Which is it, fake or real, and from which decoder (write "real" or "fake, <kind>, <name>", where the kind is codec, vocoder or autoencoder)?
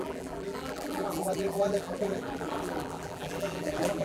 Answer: fake, vocoder, BigVGAN v2